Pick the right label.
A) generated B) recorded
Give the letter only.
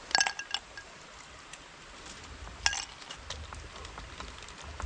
B